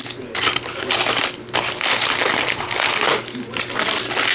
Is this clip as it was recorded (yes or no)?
yes